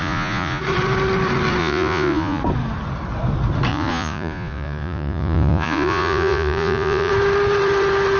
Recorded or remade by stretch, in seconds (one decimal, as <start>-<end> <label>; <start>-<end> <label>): 0.0-0.6 remade; 0.6-1.6 recorded; 1.6-2.4 remade; 2.4-3.7 recorded; 3.7-7.1 remade; 7.1-8.2 recorded